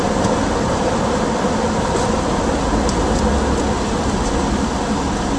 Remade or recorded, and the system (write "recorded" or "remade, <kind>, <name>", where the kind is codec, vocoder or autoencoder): recorded